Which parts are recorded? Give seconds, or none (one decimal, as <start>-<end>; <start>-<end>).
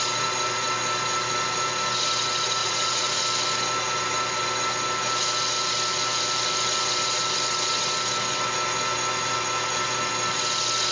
0.0-2.6; 3.2-10.9